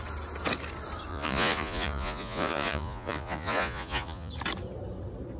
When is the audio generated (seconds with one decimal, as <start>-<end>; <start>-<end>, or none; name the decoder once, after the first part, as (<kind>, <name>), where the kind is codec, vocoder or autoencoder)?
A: 1.1-4.3 (vocoder, Vocos)